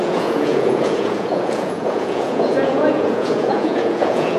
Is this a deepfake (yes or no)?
yes